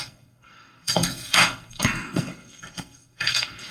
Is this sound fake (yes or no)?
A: yes